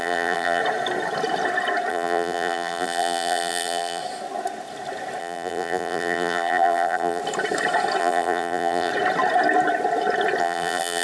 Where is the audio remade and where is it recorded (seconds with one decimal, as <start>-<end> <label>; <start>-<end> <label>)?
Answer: 0.0-0.6 remade; 0.6-1.9 recorded; 1.9-4.0 remade; 4.0-5.2 recorded; 5.2-7.2 remade; 7.2-8.0 recorded; 8.0-8.9 remade; 8.9-10.4 recorded; 10.4-11.0 remade